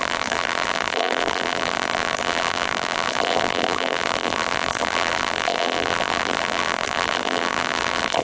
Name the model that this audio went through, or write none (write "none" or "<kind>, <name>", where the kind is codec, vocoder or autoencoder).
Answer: vocoder, BigVGAN v2